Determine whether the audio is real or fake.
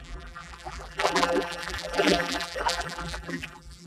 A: fake